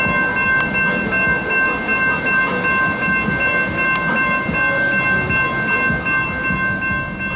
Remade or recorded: recorded